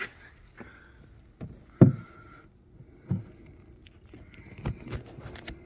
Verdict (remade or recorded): recorded